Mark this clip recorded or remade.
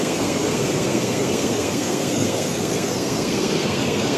remade